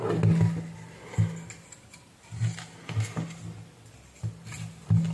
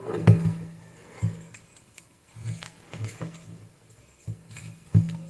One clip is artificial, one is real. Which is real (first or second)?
first